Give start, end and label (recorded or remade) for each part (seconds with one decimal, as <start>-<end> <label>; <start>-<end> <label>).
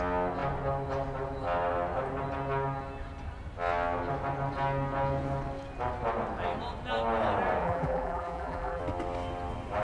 0.0-7.6 recorded; 7.6-8.8 remade; 8.8-9.8 recorded